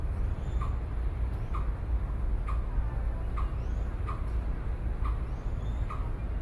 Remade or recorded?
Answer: recorded